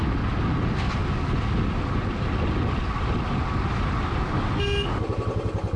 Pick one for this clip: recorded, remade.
recorded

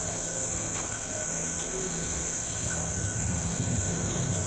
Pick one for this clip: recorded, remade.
remade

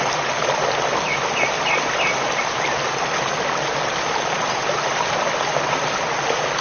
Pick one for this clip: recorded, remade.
recorded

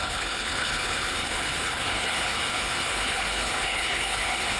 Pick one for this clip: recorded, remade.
remade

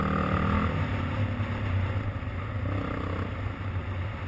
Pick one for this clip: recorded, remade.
recorded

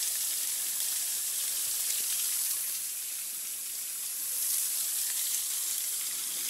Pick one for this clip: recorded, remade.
remade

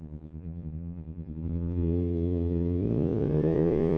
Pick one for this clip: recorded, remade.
remade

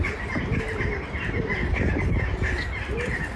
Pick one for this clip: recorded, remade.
recorded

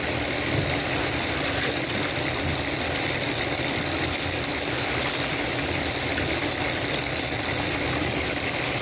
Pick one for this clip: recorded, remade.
remade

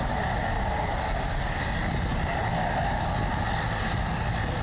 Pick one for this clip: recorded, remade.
recorded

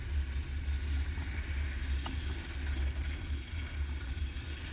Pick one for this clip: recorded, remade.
recorded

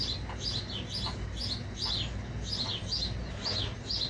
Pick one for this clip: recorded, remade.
recorded